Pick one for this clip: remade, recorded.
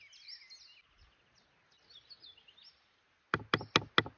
recorded